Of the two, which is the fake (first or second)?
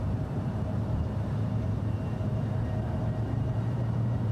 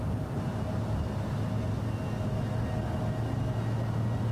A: first